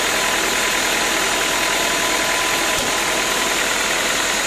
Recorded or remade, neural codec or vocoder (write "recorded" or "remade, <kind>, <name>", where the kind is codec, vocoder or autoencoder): recorded